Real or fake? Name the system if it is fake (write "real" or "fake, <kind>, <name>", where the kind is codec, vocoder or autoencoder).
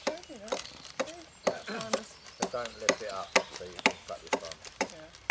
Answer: real